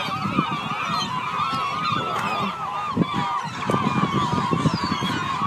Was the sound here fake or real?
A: real